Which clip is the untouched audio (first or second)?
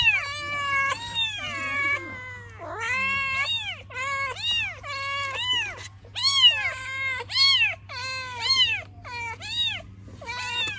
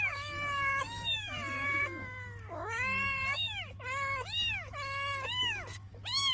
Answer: first